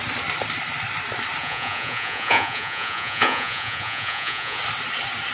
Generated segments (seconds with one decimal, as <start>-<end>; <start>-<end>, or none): 1.4-4.6